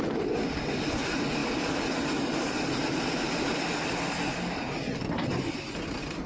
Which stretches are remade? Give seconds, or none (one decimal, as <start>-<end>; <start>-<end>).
none